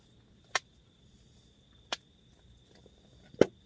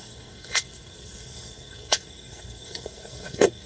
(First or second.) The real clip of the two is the first